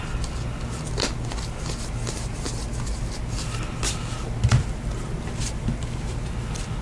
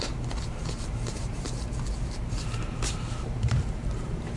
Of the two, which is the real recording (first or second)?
first